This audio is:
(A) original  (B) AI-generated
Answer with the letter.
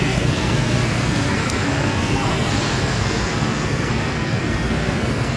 B